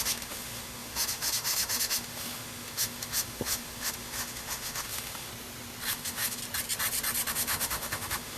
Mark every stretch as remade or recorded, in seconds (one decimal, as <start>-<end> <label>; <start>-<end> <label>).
0.0-5.3 remade; 5.3-5.9 recorded; 5.9-6.4 remade; 6.4-7.3 recorded; 7.3-8.4 remade